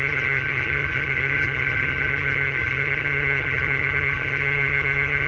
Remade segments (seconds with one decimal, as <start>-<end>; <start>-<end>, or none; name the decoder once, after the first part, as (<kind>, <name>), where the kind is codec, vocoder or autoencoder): 0.0-5.3 (vocoder, HiFi-GAN)